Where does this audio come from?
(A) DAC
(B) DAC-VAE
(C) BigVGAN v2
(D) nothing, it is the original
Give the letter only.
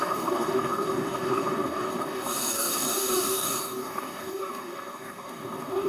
A